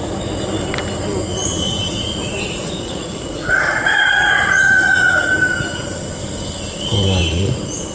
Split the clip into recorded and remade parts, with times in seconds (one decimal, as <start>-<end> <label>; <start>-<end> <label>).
0.0-1.4 recorded; 1.4-5.2 remade; 5.2-7.2 recorded; 7.2-7.9 remade